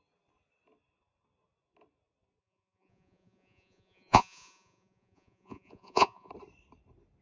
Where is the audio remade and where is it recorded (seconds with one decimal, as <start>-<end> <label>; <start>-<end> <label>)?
0.0-2.4 recorded; 2.4-6.3 remade; 6.3-7.2 recorded